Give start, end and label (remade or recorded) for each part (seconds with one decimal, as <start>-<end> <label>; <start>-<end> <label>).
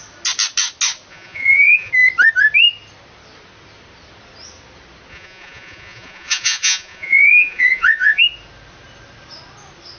0.0-1.1 recorded; 1.1-1.9 remade; 1.9-5.1 recorded; 5.1-8.2 remade; 8.2-10.0 recorded